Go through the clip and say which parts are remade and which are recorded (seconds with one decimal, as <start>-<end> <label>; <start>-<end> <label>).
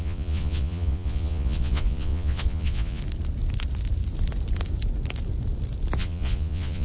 0.0-3.0 remade; 3.0-6.0 recorded; 6.0-6.8 remade